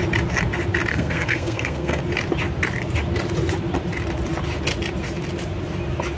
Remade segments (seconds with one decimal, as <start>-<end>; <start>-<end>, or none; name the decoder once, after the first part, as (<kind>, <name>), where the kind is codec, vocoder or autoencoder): 0.9-2.0 (codec, SNAC)